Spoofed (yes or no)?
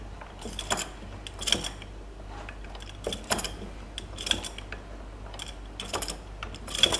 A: no